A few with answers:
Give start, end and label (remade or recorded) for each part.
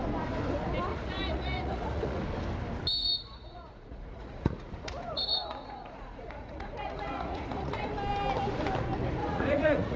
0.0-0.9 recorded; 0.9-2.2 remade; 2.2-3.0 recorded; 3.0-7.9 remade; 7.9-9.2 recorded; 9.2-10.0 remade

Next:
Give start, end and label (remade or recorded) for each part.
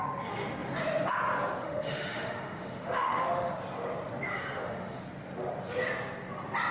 0.0-1.6 recorded; 1.6-3.5 remade; 3.5-4.3 recorded; 4.3-5.0 remade; 5.0-6.7 recorded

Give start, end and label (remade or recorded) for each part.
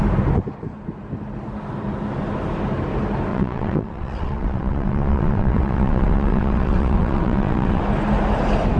0.0-3.3 recorded; 3.3-7.8 remade; 7.8-8.8 recorded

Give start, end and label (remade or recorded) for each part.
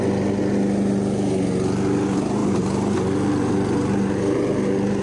0.0-5.0 recorded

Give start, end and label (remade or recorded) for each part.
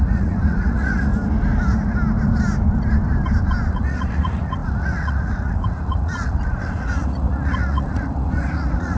0.0-1.1 remade; 1.1-3.7 recorded; 3.7-9.0 remade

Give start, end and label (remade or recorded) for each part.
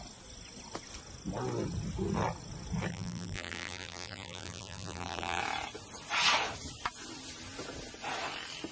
0.0-2.9 recorded; 2.9-5.4 remade; 5.4-8.7 recorded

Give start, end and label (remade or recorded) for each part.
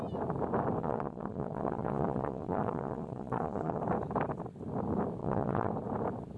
0.0-0.8 recorded; 0.8-3.8 remade; 3.8-5.2 recorded; 5.2-5.7 remade; 5.7-6.4 recorded